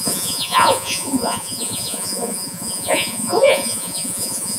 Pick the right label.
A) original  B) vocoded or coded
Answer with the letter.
B